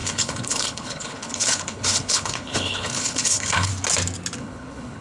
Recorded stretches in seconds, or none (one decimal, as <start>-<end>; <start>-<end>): 3.7-4.4

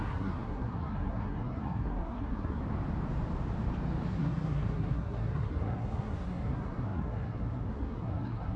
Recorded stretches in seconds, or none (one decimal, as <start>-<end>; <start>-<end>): 2.6-4.1